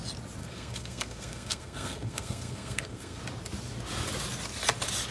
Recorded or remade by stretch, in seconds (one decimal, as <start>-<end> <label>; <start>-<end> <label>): 0.0-0.4 recorded; 0.4-3.2 remade; 3.2-5.1 recorded